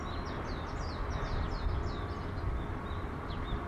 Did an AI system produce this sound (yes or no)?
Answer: no